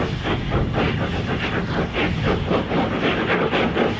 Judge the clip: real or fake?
real